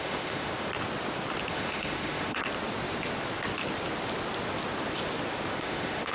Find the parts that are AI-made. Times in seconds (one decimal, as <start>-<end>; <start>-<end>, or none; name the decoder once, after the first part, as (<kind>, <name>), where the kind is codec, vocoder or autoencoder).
0.0-0.5 (autoencoder, DAC-VAE); 1.5-2.4; 5.6-6.1